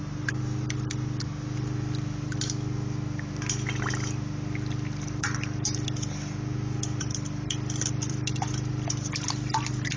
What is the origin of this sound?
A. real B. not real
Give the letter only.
B